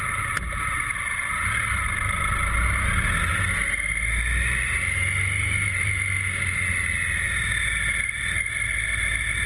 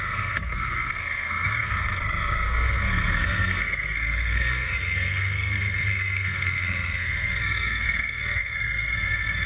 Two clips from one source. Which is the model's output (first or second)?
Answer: second